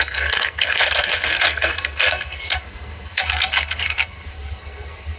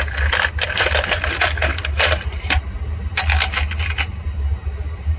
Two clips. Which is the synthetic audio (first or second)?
first